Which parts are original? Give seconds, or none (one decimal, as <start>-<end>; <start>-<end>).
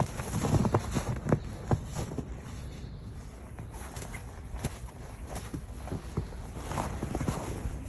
0.0-7.9